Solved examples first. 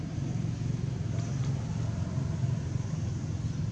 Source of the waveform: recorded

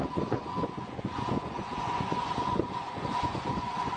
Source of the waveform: remade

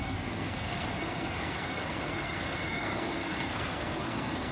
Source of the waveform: remade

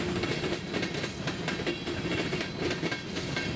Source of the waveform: recorded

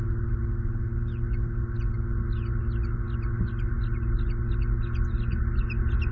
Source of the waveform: recorded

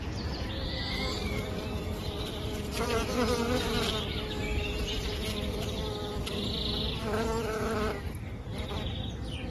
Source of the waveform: recorded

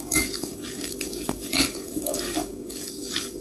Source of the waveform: remade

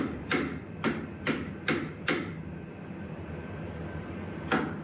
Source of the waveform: remade